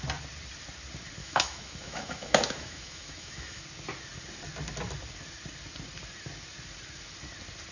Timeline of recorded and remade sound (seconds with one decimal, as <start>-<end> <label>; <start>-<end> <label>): 0.0-1.2 recorded; 1.2-3.6 remade; 3.6-7.7 recorded